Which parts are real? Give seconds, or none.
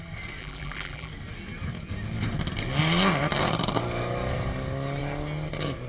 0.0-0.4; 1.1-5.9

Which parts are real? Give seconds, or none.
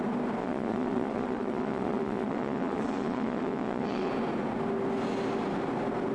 0.0-0.4; 4.1-6.1